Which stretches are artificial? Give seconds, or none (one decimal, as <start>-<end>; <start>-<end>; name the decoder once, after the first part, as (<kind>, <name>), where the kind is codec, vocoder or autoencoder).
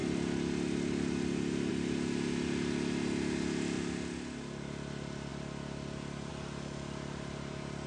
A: none